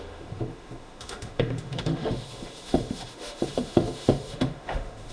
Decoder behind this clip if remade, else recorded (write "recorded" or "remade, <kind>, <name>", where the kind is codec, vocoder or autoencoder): remade, autoencoder, DAC-VAE